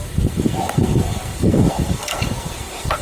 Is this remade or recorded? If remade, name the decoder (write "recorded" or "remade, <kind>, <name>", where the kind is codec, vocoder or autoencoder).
remade, codec, SNAC